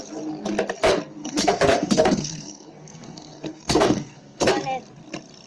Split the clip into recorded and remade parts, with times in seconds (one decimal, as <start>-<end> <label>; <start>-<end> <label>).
0.0-1.2 recorded; 1.2-4.5 remade; 4.5-5.5 recorded